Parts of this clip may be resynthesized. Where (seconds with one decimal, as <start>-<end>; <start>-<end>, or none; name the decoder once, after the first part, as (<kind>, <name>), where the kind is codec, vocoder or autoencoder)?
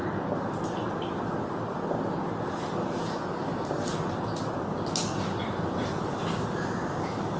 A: none